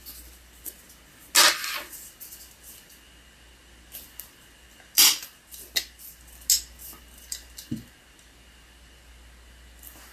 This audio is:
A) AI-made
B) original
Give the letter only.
B